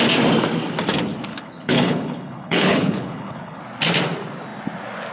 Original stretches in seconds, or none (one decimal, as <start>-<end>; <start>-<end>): 0.0-1.3; 3.6-5.1